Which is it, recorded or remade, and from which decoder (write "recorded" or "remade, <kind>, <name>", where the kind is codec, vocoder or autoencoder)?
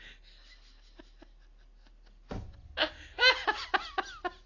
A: recorded